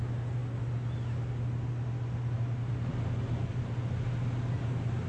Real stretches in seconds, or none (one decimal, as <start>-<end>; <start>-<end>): 0.0-5.1